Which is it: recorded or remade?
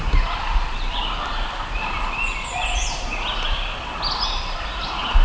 recorded